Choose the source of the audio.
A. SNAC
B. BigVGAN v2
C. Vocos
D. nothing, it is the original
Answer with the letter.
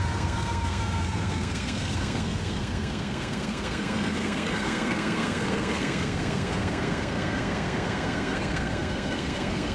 A